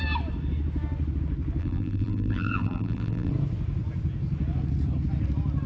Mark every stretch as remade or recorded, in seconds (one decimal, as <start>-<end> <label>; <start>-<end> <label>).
0.0-1.6 recorded; 1.6-3.3 remade; 3.3-5.7 recorded